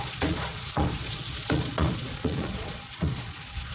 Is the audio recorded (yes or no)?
no